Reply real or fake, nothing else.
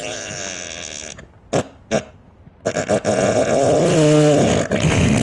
real